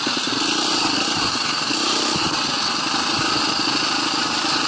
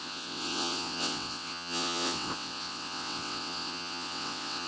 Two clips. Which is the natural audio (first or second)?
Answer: first